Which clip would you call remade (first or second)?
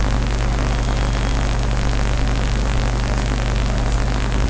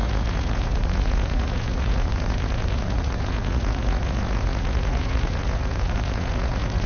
second